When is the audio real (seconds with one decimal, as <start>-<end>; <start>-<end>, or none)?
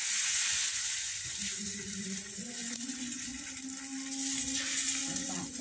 3.3-5.0